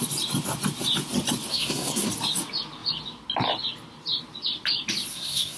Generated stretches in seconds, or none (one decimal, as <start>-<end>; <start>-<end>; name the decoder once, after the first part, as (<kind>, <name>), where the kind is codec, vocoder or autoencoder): 1.5-2.1 (codec, SNAC); 5.1-5.6